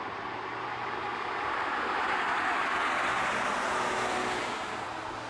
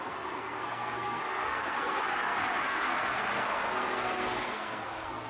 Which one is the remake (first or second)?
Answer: second